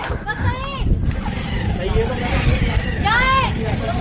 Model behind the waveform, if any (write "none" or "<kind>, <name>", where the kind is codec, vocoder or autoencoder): none